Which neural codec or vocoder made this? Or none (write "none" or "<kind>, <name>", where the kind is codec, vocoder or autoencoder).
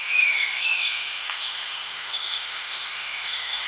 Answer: autoencoder, DAC-VAE